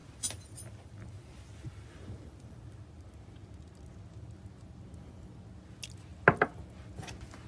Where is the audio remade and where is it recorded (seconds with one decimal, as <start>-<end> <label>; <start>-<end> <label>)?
0.0-2.8 remade; 2.8-7.5 recorded